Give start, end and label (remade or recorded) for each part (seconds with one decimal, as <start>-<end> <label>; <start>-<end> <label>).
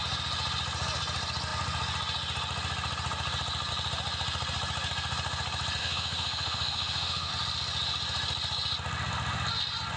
0.0-5.8 recorded; 5.8-7.3 remade; 7.3-10.0 recorded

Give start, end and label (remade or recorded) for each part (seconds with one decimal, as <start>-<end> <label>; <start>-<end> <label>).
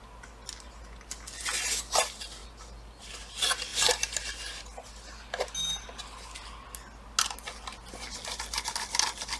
0.0-9.4 recorded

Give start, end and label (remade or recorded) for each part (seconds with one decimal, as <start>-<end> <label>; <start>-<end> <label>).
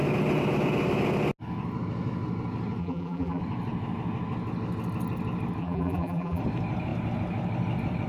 0.0-2.8 recorded; 2.8-3.4 remade; 3.4-5.6 recorded; 5.6-6.4 remade; 6.4-8.1 recorded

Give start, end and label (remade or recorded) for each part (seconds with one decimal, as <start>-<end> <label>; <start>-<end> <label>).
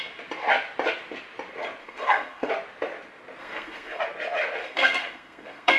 0.0-1.8 recorded; 1.8-2.5 remade; 2.5-3.4 recorded; 3.4-4.0 remade; 4.0-4.6 recorded; 4.6-5.8 remade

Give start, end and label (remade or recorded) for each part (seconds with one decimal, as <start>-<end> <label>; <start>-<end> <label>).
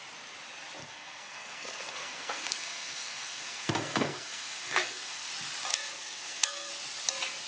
0.0-0.8 recorded; 0.8-5.3 remade; 5.3-5.7 recorded; 5.7-6.7 remade; 6.7-7.5 recorded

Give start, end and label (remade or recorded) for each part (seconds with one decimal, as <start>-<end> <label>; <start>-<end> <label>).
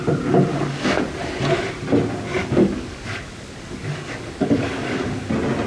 0.0-0.5 recorded; 0.5-1.0 remade; 1.0-2.4 recorded; 2.4-5.3 remade; 5.3-5.7 recorded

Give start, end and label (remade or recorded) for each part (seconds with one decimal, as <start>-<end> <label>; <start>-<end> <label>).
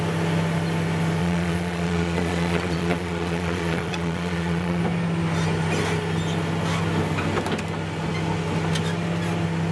0.0-1.2 recorded; 1.2-4.8 remade; 4.8-9.7 recorded